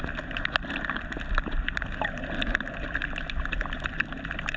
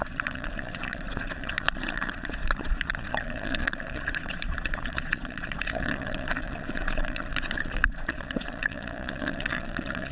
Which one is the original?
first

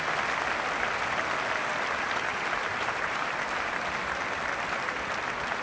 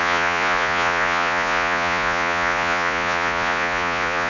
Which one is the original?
first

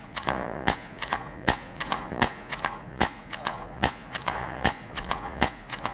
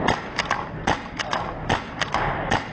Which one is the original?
second